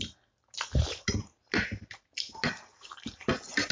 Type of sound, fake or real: real